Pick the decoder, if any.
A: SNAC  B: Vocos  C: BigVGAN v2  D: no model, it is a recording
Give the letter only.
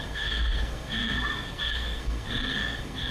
A